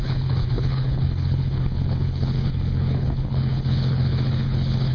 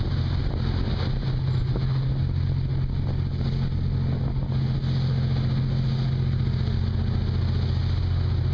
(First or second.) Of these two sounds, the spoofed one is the first